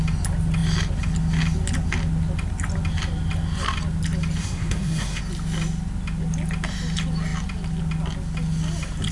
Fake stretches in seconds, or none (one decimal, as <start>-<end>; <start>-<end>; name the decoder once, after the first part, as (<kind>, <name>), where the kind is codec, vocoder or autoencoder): 4.4-5.2 (codec, SNAC)

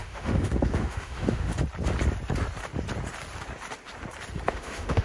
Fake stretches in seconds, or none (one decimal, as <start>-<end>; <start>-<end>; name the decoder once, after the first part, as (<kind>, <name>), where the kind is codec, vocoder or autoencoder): 0.0-1.5 (autoencoder, DAC-VAE); 4.5-5.0

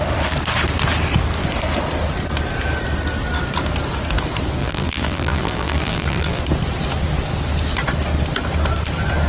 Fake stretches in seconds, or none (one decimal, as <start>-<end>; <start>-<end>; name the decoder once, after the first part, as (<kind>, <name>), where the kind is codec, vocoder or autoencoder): 4.6-6.4 (vocoder, BigVGAN v2)